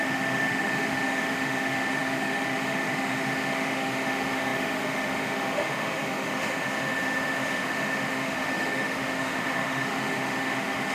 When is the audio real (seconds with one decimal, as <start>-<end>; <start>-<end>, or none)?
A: none